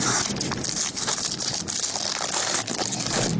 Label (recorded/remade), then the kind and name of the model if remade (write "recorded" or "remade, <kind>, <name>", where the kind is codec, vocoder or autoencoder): recorded